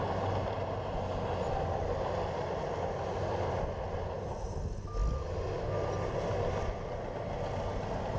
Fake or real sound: real